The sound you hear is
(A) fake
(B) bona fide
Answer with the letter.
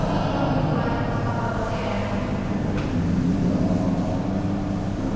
B